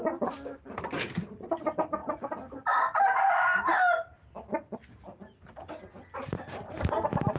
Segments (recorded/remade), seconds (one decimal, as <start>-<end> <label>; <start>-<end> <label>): 0.0-7.4 recorded